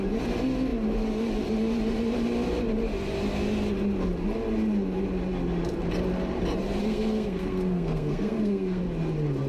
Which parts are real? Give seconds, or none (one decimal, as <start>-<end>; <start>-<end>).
0.0-6.8; 8.8-9.5